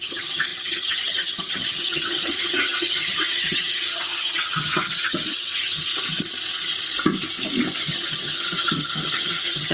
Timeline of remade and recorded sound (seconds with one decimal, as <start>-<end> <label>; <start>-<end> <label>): 0.0-5.9 remade; 5.9-7.9 recorded; 7.9-9.7 remade